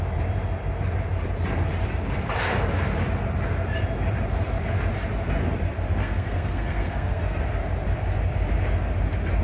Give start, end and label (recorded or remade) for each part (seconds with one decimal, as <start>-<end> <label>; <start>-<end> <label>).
0.0-6.0 recorded; 6.0-7.4 remade; 7.4-9.4 recorded